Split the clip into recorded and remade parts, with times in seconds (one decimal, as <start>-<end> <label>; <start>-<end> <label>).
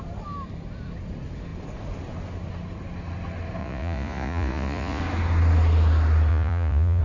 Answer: 0.0-3.6 recorded; 3.6-5.0 remade; 5.0-6.3 recorded; 6.3-7.0 remade